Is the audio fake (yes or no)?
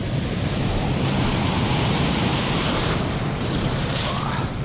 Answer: yes